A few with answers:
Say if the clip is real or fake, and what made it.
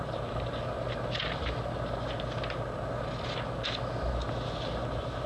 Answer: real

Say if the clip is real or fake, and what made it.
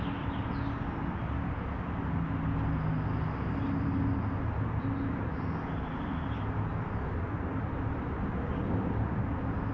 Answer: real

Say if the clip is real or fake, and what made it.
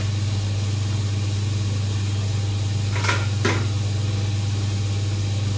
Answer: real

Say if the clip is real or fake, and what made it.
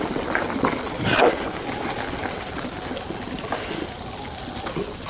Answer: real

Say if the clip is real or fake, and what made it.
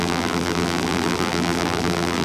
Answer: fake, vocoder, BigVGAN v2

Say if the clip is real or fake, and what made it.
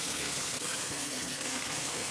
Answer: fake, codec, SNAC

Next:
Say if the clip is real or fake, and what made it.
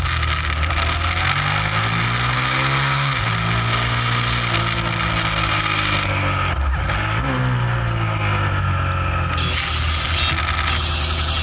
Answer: real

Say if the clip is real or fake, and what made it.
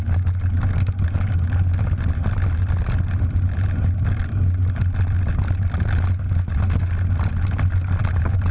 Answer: real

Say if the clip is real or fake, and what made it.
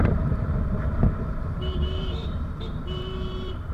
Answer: fake, vocoder, BigVGAN v2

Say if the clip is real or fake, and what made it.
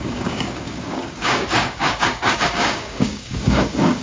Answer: fake, codec, DAC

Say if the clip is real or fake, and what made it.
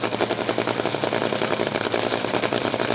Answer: real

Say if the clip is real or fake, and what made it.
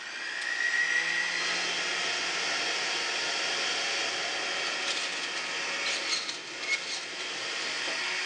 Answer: real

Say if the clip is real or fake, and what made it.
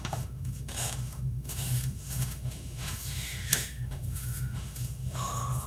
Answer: fake, autoencoder, DAC-VAE